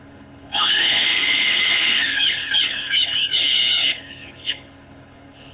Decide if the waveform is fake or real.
fake